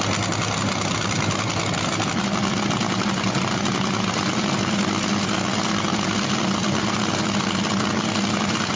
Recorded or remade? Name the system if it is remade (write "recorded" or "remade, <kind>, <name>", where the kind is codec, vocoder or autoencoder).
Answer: recorded